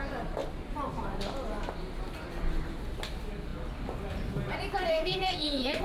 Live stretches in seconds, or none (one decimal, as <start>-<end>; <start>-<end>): 0.0-4.9